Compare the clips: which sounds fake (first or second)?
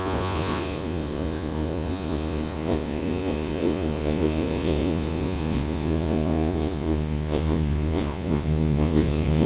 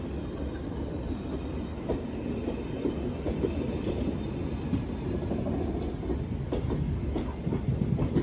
first